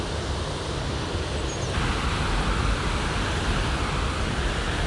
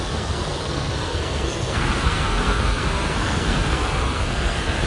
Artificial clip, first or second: second